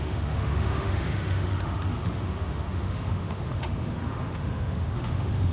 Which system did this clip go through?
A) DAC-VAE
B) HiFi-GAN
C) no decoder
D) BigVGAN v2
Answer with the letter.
A